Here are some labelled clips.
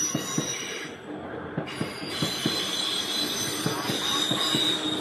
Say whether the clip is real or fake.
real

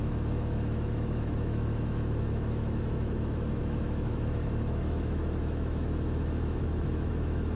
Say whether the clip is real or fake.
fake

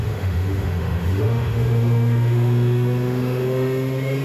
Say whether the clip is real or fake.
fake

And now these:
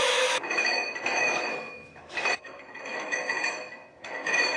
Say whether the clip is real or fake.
fake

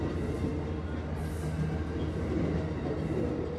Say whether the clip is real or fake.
real